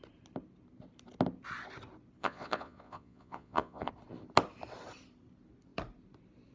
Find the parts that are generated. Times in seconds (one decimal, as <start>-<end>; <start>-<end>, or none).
2.2-3.9